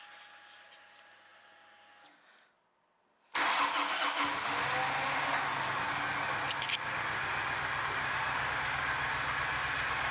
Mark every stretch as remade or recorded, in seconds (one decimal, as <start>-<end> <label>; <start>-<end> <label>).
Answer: 0.0-10.1 recorded